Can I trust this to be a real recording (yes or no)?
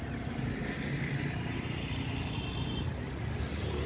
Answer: yes